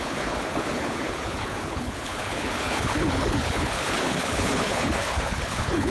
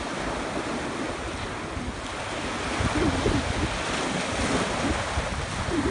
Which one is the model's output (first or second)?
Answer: first